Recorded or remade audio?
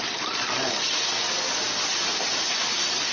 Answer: recorded